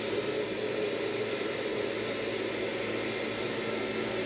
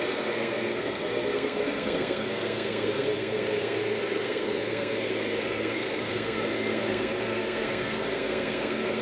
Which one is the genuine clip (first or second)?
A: first